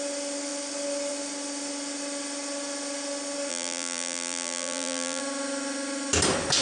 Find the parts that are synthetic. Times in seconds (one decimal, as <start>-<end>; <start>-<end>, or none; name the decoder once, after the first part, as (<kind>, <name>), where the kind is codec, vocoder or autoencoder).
3.5-5.2 (vocoder, BigVGAN v2)